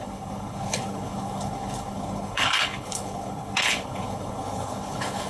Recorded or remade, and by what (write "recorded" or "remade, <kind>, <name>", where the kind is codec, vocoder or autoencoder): remade, codec, HILCodec